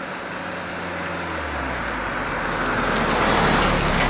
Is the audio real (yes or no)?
yes